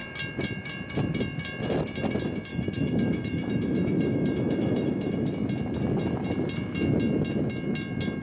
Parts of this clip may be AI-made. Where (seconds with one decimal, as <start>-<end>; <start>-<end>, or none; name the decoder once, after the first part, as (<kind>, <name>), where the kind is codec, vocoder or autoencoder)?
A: 2.5-5.3 (autoencoder, DAC-VAE)